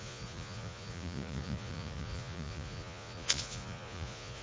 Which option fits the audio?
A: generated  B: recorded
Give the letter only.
A